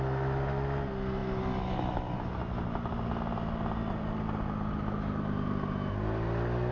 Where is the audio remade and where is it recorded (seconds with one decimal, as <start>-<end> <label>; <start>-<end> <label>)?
0.0-6.7 recorded